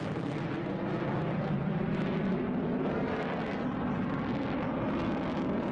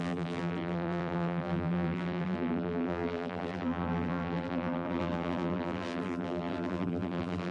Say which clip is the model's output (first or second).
second